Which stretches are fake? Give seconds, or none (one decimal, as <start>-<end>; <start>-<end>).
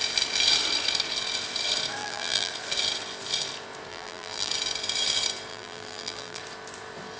2.0-2.5; 3.9-4.5; 5.5-6.4